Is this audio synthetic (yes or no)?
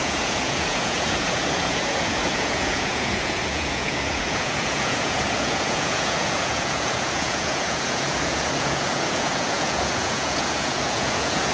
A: yes